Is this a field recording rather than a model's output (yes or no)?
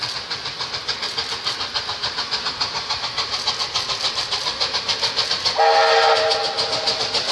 yes